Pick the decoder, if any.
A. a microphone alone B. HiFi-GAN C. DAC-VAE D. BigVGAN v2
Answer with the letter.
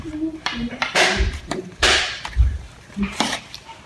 D